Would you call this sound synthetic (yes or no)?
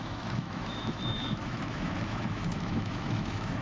yes